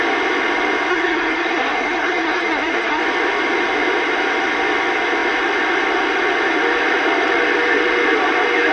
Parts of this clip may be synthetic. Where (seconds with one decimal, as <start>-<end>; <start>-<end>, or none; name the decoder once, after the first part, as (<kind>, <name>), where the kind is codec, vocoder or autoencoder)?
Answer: 0.9-3.0 (codec, SNAC)